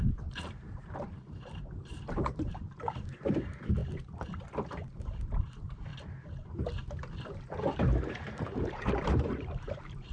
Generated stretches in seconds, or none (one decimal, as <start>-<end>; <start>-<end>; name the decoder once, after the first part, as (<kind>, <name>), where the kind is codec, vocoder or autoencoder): 0.0-3.8 (vocoder, BigVGAN v2); 5.0-5.9; 7.2-10.1